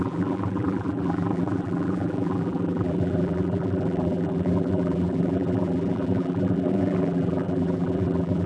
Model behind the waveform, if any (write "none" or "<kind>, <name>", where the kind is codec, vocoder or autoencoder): vocoder, BigVGAN v2